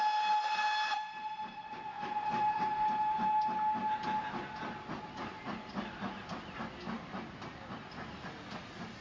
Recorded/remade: recorded